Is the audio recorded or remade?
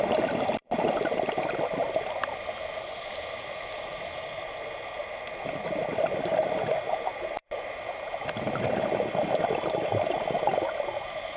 recorded